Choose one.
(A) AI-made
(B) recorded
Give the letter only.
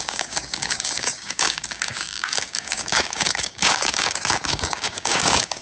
A